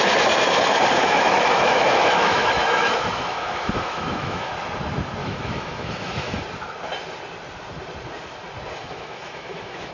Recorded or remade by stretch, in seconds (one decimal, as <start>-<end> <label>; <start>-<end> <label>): 0.0-1.0 recorded; 1.0-4.5 remade; 4.5-5.2 recorded; 5.2-6.4 remade; 6.4-8.8 recorded; 8.8-9.9 remade